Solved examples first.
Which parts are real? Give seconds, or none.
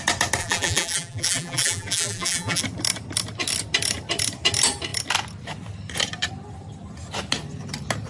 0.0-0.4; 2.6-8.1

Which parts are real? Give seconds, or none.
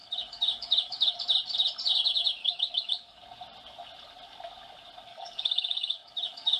1.1-2.4; 3.2-5.1